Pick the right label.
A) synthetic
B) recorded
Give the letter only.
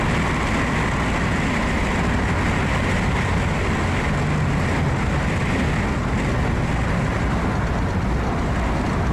B